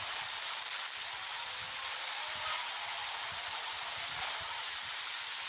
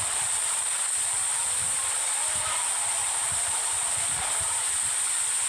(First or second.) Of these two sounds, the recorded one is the first